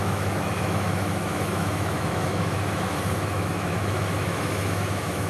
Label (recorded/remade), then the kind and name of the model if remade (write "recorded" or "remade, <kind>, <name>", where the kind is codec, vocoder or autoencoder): remade, autoencoder, DAC-VAE